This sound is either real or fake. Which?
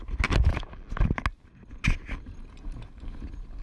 real